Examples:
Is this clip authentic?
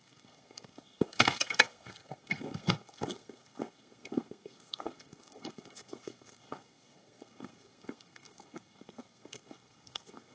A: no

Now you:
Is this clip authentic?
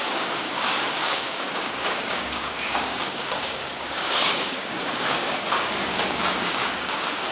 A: no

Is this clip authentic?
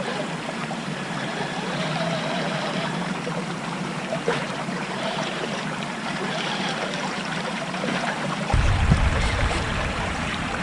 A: no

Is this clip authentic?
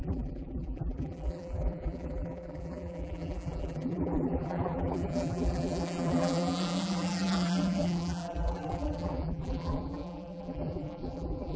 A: no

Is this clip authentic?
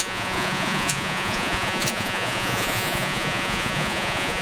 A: no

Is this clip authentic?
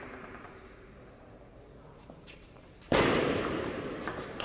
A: no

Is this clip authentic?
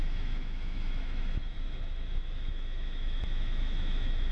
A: no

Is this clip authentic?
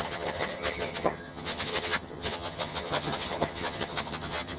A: no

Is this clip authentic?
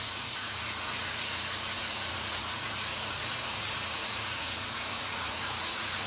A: no